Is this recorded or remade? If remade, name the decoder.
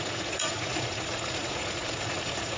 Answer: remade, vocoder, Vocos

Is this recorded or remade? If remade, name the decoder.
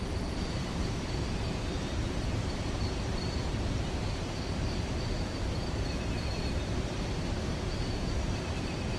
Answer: remade, vocoder, BigVGAN v2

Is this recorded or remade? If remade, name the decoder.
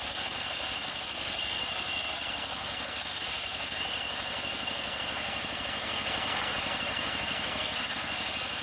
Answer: remade, codec, SNAC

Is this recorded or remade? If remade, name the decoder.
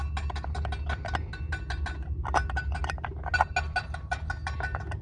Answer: recorded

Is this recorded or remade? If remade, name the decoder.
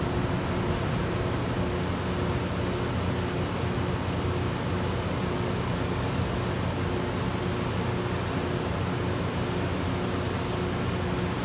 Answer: recorded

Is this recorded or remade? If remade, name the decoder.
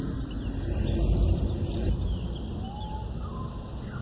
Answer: recorded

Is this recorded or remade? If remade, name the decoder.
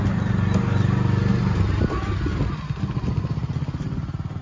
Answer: recorded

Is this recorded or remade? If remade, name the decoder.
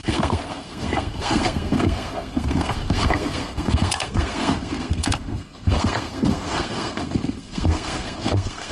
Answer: remade, codec, SNAC